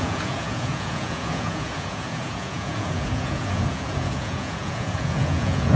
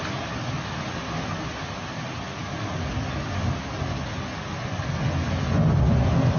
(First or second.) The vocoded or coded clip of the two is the first